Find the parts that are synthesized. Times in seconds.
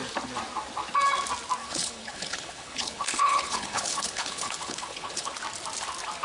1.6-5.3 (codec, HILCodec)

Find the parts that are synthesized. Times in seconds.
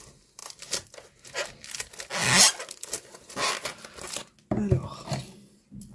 none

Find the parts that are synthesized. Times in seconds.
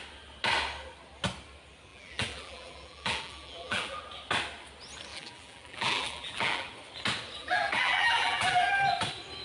1.9-4.0 (vocoder, BigVGAN v2); 5.1-6.7; 7.4-8.7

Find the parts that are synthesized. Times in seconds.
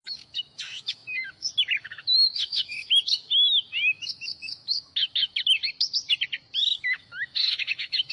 0.0-5.6 (autoencoder, DAC-VAE); 6.6-8.1